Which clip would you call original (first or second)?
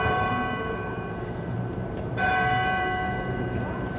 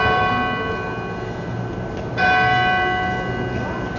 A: second